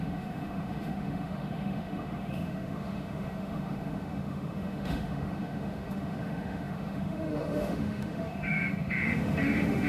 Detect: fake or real fake